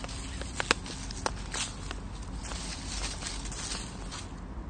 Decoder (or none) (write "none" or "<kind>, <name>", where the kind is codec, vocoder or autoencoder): none